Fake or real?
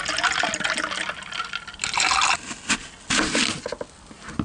real